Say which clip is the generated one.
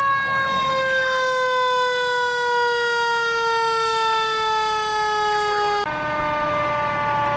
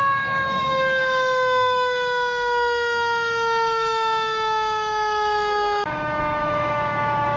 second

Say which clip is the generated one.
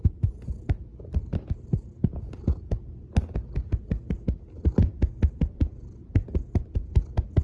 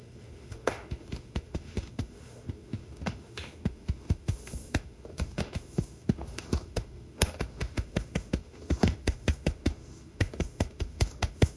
second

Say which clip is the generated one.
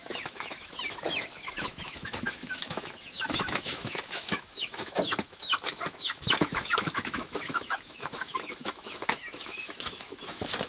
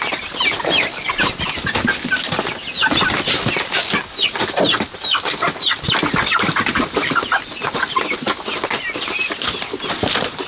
first